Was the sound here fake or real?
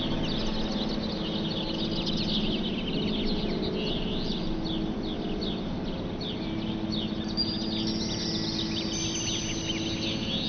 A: real